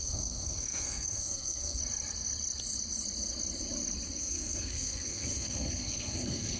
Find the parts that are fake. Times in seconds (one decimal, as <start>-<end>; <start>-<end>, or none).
0.0-1.8; 4.2-6.6